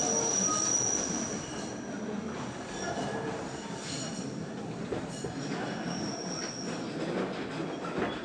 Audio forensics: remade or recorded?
recorded